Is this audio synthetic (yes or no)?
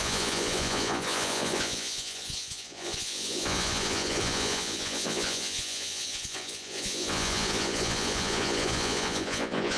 yes